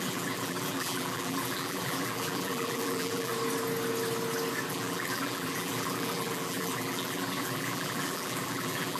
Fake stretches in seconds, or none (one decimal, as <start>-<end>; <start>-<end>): 0.0-3.3; 4.7-9.0